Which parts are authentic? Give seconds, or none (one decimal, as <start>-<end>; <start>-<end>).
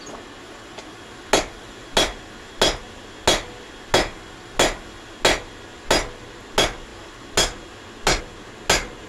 0.0-9.1